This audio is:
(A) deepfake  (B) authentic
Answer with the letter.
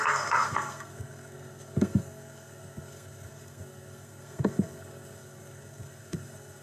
A